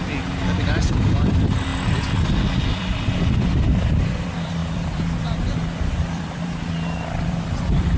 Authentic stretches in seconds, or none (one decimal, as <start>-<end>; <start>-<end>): 1.7-2.7

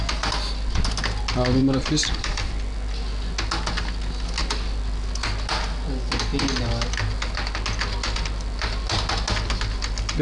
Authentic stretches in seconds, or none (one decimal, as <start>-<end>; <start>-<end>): 0.0-1.6; 2.5-10.2

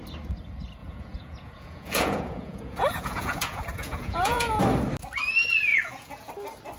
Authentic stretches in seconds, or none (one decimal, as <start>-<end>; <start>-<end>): 0.0-0.8; 4.6-5.7; 6.3-6.8